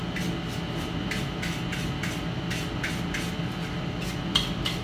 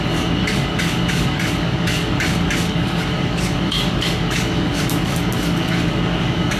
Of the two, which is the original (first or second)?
first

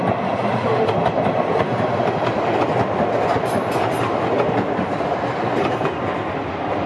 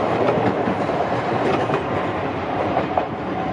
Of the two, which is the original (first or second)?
first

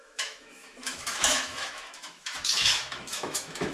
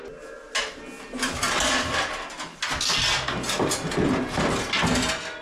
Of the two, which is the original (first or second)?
second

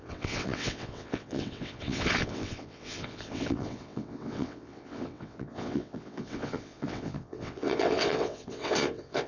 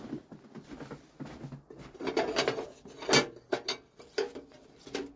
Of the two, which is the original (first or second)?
second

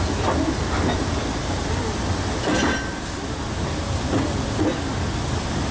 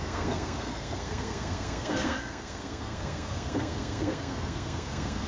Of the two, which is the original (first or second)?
first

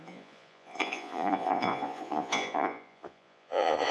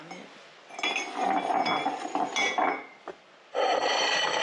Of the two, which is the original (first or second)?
second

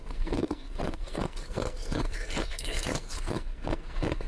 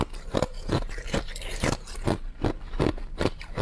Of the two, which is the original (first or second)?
second